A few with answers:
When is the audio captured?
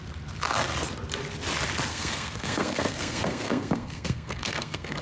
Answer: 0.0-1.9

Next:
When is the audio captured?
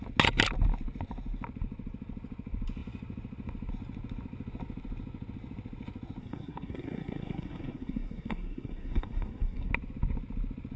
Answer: 0.0-6.2; 9.7-10.8